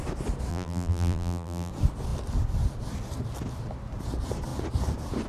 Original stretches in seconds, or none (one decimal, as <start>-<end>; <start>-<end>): 0.0-0.5; 1.7-5.3